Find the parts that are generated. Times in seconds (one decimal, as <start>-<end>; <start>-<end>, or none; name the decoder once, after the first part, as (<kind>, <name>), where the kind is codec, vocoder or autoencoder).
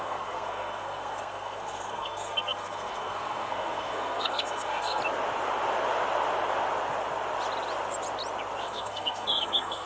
0.0-5.0 (codec, SNAC); 8.6-9.9